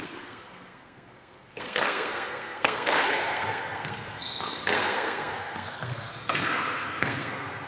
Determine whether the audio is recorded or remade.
remade